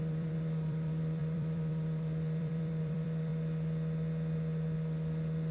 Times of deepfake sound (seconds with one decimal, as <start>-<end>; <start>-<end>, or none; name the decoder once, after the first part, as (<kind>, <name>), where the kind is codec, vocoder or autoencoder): 0.0-3.3 (vocoder, BigVGAN v2)